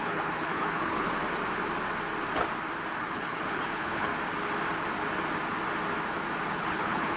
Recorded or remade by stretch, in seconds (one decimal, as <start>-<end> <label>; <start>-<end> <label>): 0.0-1.1 remade; 1.1-3.0 recorded; 3.0-4.1 remade; 4.1-6.5 recorded; 6.5-7.2 remade